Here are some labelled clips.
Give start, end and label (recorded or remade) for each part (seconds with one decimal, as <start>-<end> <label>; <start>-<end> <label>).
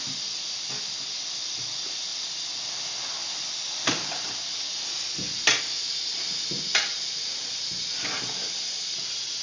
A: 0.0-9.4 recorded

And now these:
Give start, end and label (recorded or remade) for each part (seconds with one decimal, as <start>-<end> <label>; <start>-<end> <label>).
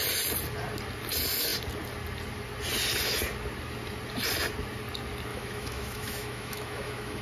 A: 0.0-5.3 recorded; 5.3-7.2 remade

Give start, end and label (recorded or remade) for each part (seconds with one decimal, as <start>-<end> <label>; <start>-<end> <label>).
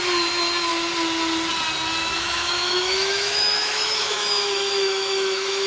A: 0.0-2.0 recorded; 2.0-5.7 remade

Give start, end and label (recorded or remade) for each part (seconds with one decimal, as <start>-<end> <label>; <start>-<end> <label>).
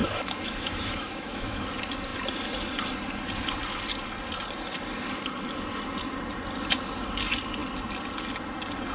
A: 0.0-1.6 remade; 1.6-8.9 recorded